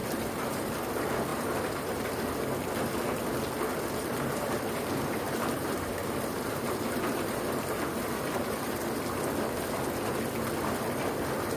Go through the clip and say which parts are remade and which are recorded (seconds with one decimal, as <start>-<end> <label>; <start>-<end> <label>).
0.0-0.8 remade; 0.8-1.3 recorded; 1.3-2.1 remade; 2.1-4.0 recorded; 4.0-9.2 remade; 9.2-11.6 recorded